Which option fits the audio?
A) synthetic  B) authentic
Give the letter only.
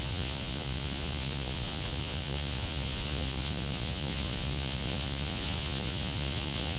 A